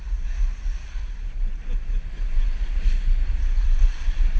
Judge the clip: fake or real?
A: real